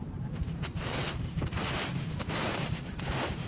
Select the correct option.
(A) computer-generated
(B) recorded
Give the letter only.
A